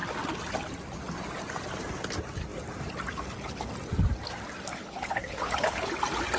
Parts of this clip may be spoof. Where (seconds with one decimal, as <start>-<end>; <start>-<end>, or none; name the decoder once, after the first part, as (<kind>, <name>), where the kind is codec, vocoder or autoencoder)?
4.7-5.9 (codec, HILCodec)

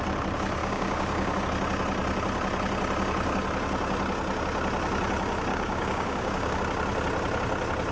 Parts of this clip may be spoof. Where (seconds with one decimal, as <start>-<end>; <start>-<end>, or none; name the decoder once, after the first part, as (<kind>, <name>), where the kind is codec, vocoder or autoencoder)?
0.6-1.4 (codec, DAC); 5.5-6.6